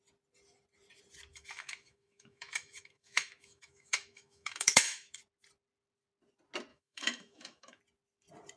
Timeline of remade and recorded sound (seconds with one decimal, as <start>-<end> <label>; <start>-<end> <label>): 0.0-1.3 recorded; 1.3-5.2 remade; 5.2-6.7 recorded; 6.7-7.8 remade; 7.8-8.6 recorded